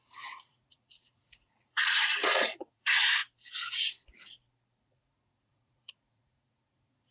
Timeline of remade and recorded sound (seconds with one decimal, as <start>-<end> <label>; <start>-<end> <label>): 0.0-3.2 remade; 3.2-4.8 recorded; 4.8-7.1 remade